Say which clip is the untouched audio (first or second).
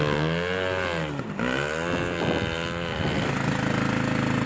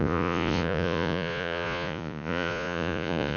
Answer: first